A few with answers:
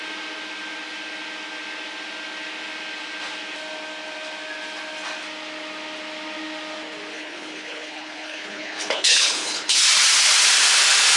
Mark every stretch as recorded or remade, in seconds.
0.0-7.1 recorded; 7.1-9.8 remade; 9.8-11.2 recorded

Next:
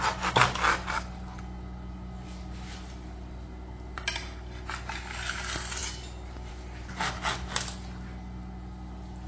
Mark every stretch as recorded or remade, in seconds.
0.0-9.3 recorded

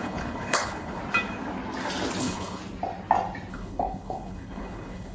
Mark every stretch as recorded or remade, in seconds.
0.0-1.0 remade; 1.0-2.2 recorded; 2.2-2.6 remade; 2.6-3.5 recorded; 3.5-5.1 remade

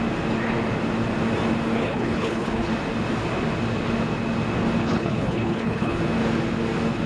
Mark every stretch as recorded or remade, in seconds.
0.0-1.8 recorded; 1.8-2.7 remade; 2.7-4.8 recorded; 4.8-6.0 remade; 6.0-7.1 recorded

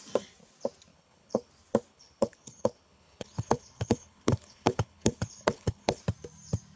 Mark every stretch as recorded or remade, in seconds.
0.0-0.9 recorded; 0.9-1.5 remade; 1.5-1.9 recorded; 1.9-6.0 remade; 6.0-6.8 recorded